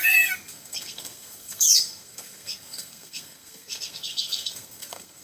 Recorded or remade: remade